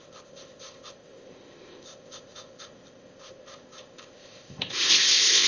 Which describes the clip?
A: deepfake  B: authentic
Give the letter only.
A